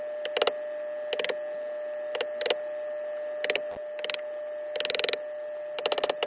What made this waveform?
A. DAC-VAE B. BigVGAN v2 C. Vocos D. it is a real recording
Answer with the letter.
D